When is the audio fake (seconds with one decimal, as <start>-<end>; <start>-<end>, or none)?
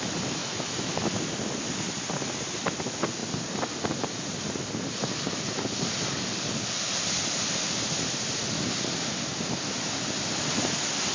0.4-0.9